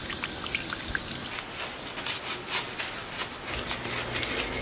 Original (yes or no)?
yes